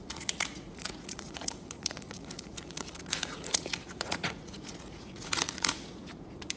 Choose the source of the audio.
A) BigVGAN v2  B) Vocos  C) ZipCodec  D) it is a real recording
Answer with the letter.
B